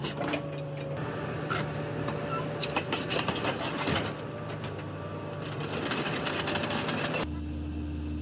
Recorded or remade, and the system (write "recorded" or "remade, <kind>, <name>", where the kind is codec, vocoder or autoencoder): recorded